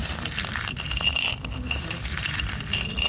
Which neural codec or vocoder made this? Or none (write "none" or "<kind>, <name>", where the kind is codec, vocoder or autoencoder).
none